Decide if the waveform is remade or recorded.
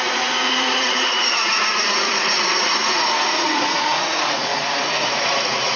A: remade